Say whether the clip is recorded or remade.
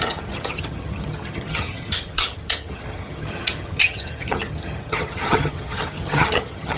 remade